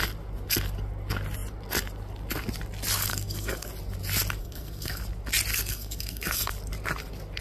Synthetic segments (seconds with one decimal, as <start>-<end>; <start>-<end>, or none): 3.1-3.7; 4.4-5.0; 5.5-6.5